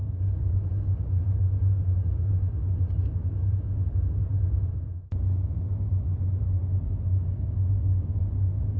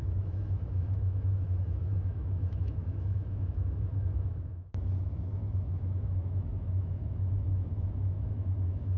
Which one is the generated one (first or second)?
second